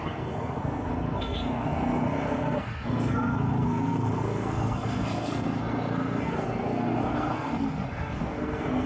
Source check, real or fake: fake